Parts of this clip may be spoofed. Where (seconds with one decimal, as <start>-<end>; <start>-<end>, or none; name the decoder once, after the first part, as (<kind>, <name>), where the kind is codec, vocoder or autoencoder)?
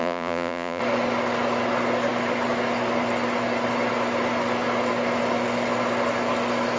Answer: 0.0-0.8 (vocoder, Vocos)